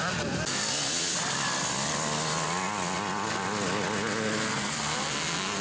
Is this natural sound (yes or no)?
yes